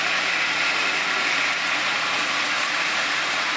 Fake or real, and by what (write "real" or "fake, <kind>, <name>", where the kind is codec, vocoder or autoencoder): fake, vocoder, Vocos